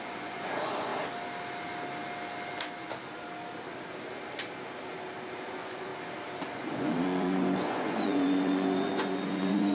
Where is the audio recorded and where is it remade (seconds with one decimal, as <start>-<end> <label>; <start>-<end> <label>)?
0.0-0.9 remade; 0.9-5.5 recorded; 5.5-5.9 remade; 5.9-6.5 recorded; 6.5-9.7 remade